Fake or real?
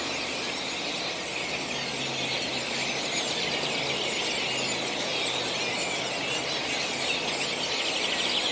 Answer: real